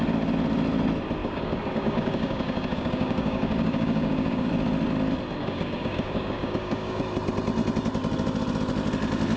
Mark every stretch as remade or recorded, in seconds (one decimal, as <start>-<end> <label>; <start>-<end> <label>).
0.0-1.2 recorded; 1.2-4.5 remade; 4.5-5.4 recorded; 5.4-7.0 remade; 7.0-9.4 recorded